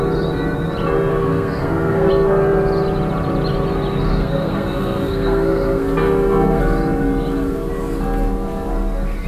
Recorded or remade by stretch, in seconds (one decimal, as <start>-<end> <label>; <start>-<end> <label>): 0.0-1.1 recorded; 1.1-2.1 remade; 2.1-4.1 recorded; 4.1-6.6 remade; 6.6-9.3 recorded